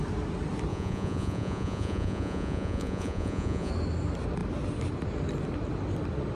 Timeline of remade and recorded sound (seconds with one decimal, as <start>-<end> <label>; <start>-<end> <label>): 0.0-0.7 recorded; 0.7-3.7 remade; 3.7-6.3 recorded